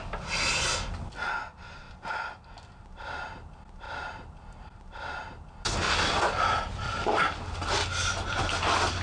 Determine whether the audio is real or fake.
real